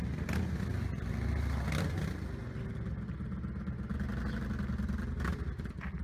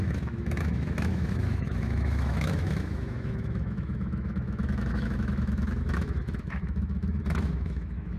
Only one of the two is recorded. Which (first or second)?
first